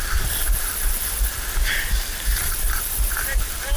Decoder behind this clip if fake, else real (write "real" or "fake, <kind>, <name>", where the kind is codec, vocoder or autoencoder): fake, vocoder, BigVGAN v2